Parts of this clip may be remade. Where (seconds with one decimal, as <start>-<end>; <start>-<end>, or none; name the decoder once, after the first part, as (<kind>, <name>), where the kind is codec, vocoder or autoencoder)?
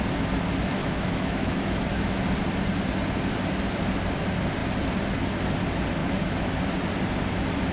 0.8-2.2 (autoencoder, DAC-VAE); 6.0-6.5